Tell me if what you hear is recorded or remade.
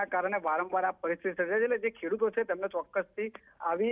recorded